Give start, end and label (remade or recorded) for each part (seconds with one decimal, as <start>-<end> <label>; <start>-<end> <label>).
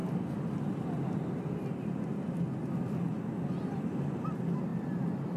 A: 0.0-5.4 recorded